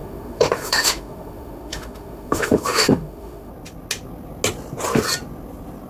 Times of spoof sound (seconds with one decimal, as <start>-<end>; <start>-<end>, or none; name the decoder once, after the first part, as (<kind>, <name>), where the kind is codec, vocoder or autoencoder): 0.0-3.5 (autoencoder, DAC-VAE)